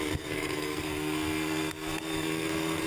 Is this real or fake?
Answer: fake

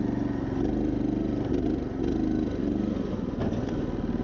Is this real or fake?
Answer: real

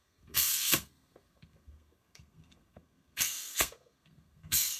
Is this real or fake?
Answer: fake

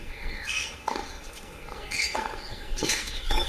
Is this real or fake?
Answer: fake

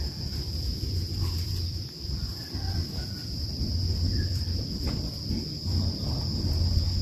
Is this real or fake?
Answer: real